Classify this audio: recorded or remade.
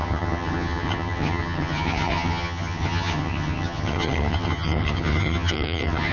remade